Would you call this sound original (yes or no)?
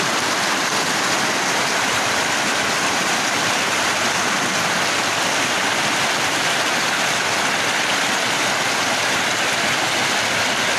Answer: yes